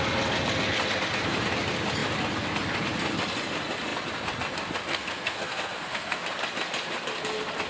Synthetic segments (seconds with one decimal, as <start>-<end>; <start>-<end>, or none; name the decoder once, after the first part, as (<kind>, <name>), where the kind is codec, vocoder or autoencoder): 4.9-6.2 (codec, SNAC)